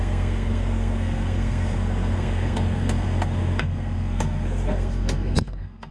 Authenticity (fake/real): fake